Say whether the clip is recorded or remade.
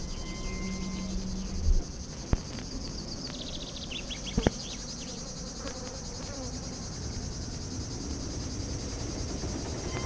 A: recorded